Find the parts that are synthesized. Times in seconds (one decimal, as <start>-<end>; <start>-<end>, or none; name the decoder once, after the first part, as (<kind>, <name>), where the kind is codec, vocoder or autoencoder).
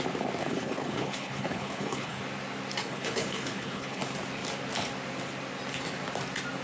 0.4-2.2 (codec, HILCodec); 2.8-4.0